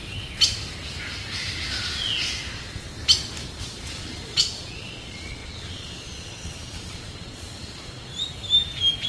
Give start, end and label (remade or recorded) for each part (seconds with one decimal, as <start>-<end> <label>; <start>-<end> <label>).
0.0-2.5 recorded; 2.5-2.9 remade; 2.9-3.6 recorded; 3.6-8.1 remade; 8.1-9.1 recorded